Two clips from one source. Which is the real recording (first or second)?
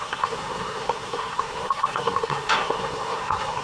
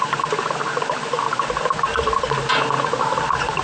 second